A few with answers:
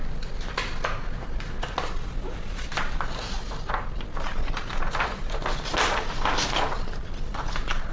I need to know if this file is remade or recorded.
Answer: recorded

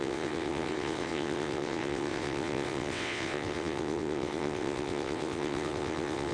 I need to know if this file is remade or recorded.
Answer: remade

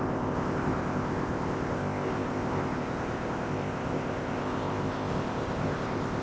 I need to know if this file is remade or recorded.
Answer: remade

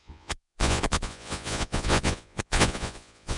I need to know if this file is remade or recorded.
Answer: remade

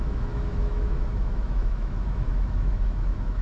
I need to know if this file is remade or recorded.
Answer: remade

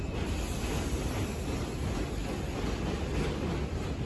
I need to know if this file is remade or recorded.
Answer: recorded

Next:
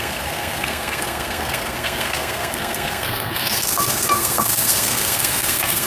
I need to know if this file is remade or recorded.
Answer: remade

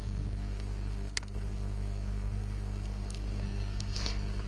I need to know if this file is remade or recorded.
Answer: remade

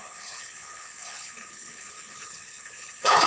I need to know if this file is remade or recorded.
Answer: remade